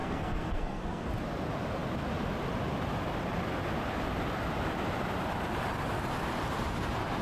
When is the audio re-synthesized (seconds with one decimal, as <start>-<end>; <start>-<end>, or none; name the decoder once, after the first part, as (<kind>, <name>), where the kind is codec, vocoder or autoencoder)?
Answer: 0.0-1.1 (codec, SNAC)